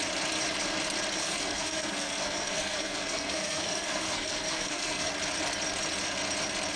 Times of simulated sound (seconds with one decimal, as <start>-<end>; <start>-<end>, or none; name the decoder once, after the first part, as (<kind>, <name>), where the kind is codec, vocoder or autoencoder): 1.2-5.1 (codec, SNAC)